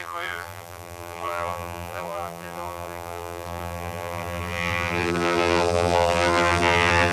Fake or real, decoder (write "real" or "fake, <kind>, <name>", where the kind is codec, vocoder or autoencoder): fake, vocoder, BigVGAN v2